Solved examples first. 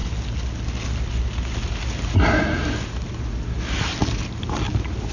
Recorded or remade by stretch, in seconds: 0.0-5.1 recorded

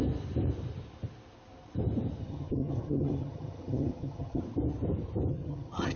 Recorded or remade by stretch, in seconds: 0.0-2.2 recorded; 2.2-4.4 remade; 4.4-5.3 recorded; 5.3-6.0 remade

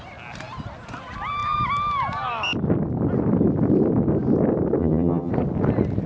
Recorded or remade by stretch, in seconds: 0.0-4.8 recorded; 4.8-5.3 remade; 5.3-6.1 recorded